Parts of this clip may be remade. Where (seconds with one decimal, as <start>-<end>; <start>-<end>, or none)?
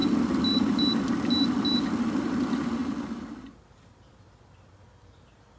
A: none